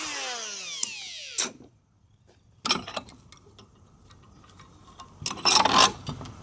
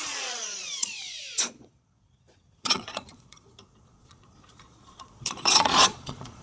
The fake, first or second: second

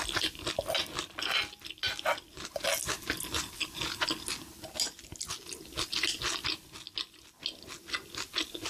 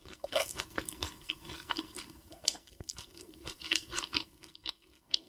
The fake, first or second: second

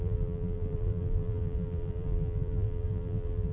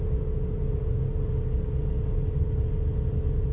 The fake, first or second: first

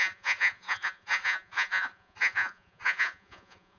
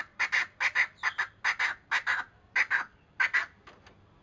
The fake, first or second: first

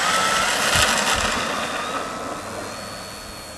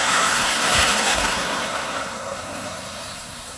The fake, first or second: second